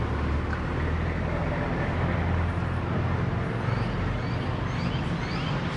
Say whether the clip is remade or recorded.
recorded